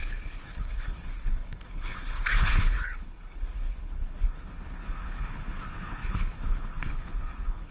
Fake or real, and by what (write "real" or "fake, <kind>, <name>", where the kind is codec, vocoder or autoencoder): fake, codec, HILCodec